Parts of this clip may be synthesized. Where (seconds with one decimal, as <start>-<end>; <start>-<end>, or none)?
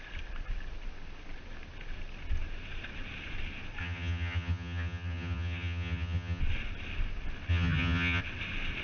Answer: 3.8-6.4; 7.5-8.2